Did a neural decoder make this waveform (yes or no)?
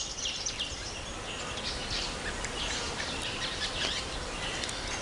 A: yes